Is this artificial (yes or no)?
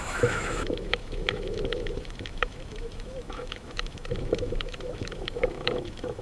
yes